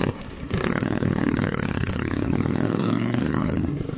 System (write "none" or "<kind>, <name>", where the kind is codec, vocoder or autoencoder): codec, SNAC